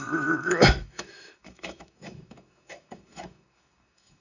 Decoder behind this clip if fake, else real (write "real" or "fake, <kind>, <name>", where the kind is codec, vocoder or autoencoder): fake, autoencoder, DAC-VAE